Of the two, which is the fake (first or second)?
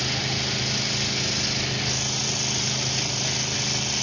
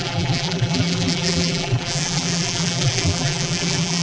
second